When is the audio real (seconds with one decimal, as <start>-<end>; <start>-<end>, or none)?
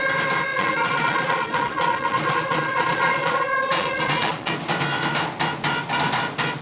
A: 0.0-0.5; 4.5-6.6